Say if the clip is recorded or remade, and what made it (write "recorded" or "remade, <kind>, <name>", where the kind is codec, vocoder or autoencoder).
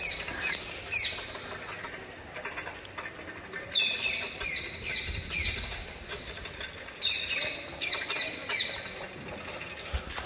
recorded